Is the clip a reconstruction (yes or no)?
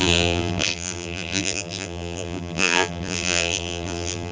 yes